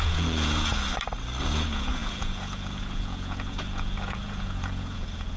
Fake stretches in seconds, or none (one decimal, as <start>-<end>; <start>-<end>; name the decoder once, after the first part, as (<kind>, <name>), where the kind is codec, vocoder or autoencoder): 0.0-0.7 (vocoder, Vocos); 1.4-5.4